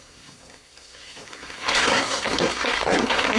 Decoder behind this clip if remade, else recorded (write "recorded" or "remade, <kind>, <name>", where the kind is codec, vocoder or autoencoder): remade, codec, SNAC